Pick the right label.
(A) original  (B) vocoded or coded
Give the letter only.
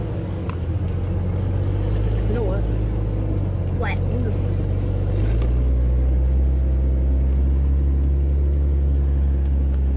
A